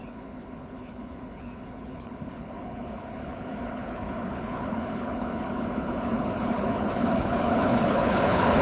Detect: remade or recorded remade